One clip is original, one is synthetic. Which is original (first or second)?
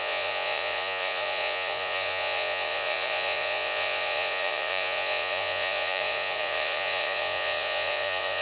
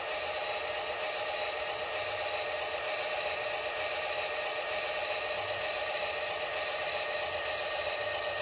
second